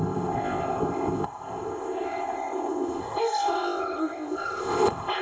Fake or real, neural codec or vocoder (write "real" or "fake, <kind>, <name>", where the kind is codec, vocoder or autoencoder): fake, codec, ZipCodec